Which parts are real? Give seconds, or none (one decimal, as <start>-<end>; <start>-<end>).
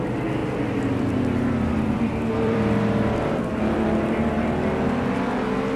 0.0-0.4; 3.9-5.8